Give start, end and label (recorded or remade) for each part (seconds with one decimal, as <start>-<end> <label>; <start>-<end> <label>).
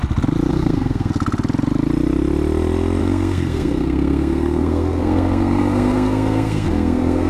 0.0-0.5 recorded; 0.5-1.1 remade; 1.1-3.0 recorded; 3.0-7.3 remade